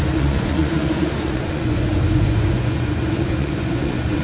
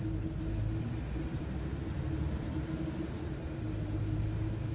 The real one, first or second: second